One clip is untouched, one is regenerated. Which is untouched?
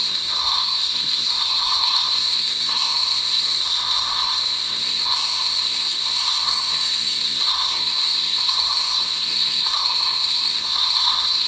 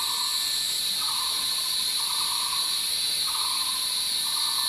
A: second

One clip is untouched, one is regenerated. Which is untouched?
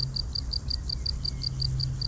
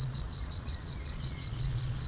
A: first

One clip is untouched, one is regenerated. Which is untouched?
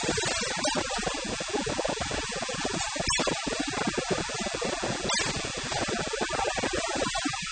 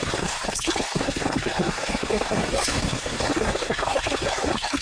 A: first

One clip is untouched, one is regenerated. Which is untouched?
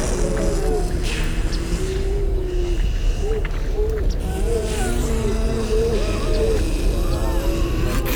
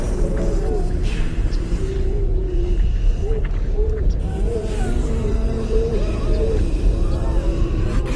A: first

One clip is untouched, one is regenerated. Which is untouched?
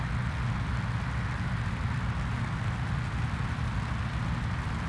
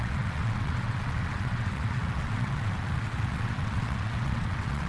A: first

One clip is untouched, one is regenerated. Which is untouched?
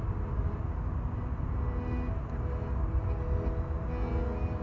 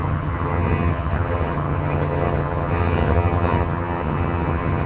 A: first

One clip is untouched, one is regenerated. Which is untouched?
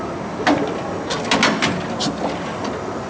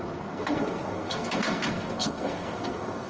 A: first